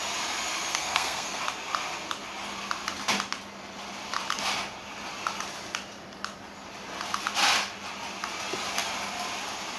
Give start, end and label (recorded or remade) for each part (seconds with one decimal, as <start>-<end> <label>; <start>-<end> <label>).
0.0-0.7 recorded; 0.7-1.4 remade; 1.4-9.8 recorded

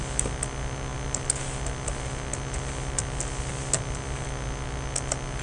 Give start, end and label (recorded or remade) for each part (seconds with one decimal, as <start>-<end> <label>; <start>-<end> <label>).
0.0-5.4 recorded